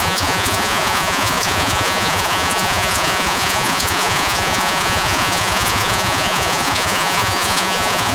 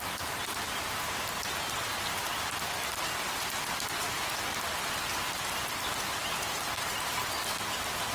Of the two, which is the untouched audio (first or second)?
second